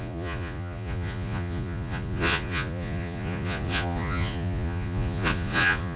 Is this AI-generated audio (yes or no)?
yes